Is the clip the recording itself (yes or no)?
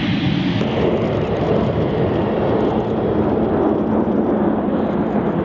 yes